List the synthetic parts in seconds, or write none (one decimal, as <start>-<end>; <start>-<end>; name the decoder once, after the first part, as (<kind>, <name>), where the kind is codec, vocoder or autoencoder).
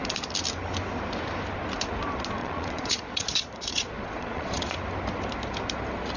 2.4-4.7 (vocoder, Vocos)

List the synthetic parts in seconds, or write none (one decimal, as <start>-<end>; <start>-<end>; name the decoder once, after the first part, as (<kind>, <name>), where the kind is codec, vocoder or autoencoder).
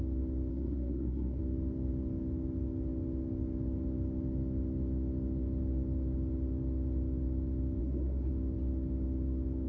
0.5-1.4 (codec, SNAC); 7.8-8.3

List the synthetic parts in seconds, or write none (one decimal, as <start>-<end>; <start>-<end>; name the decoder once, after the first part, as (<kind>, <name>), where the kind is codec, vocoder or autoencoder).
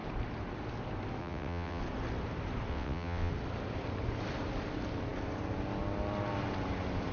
1.2-1.8 (vocoder, WaveNeXt); 2.7-3.3